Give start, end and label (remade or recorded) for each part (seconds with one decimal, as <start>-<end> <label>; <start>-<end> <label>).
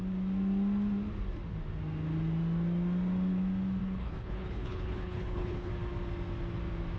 0.0-3.8 recorded; 3.8-5.7 remade; 5.7-7.0 recorded